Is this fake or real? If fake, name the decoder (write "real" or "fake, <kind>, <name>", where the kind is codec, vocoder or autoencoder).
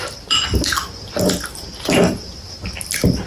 real